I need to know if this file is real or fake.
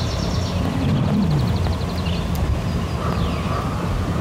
real